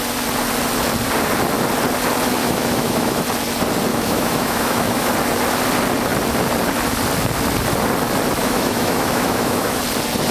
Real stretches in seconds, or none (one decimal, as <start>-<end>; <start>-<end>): 0.0-2.4; 3.2-3.9; 5.1-8.4; 9.8-10.3